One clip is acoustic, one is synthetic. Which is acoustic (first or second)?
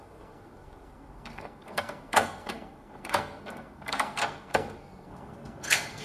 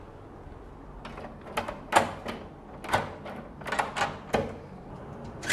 second